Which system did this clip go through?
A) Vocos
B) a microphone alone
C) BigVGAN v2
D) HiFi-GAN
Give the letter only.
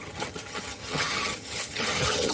D